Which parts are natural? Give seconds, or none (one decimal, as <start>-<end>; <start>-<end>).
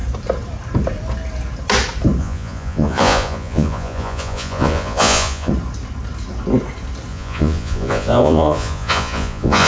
0.0-2.2; 5.5-7.1